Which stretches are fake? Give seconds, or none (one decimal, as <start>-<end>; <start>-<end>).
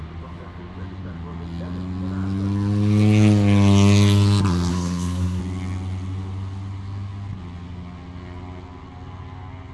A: 4.7-5.4